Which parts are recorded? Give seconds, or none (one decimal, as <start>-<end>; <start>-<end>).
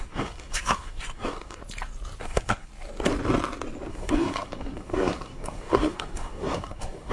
1.6-2.2; 2.7-3.9